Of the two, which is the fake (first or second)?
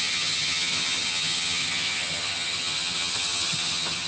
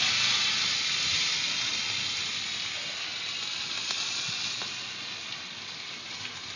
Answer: first